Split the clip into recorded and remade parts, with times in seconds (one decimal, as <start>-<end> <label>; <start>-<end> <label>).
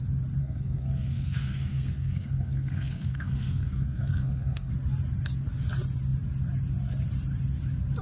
0.0-0.4 recorded; 0.4-4.7 remade; 4.7-8.0 recorded